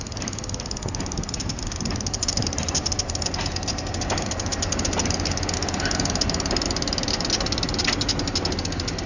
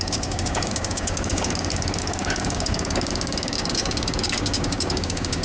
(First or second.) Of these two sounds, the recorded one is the first